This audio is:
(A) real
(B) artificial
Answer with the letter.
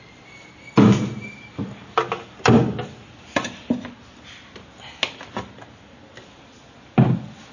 A